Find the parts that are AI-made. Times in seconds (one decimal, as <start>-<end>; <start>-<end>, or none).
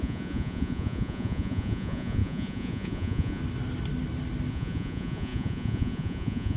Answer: 0.0-3.4; 4.5-6.6